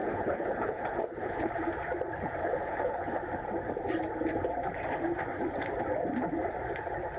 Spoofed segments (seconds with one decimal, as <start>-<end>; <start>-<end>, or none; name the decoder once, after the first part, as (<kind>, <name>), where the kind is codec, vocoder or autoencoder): 0.0-1.5 (codec, HILCodec); 2.4-3.2